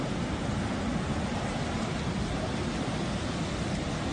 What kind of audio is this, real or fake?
real